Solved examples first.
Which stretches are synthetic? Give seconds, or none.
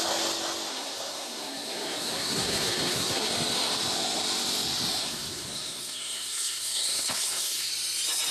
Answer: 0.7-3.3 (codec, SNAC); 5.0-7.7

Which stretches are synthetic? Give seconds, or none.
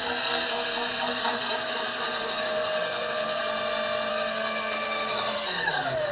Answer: 0.0-3.4 (codec, SNAC); 4.1-6.1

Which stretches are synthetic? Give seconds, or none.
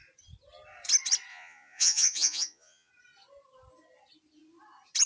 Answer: 1.3-2.9 (vocoder, Vocos)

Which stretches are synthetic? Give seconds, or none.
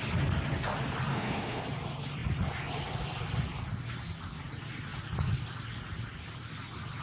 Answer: 1.1-1.6 (autoencoder, DAC-VAE)